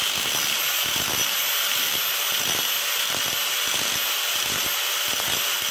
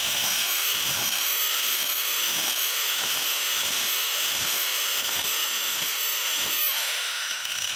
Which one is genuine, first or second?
first